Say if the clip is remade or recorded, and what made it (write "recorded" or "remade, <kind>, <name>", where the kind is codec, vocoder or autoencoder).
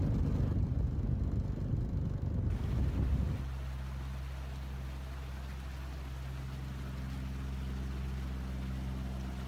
recorded